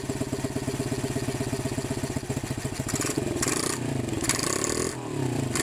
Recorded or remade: recorded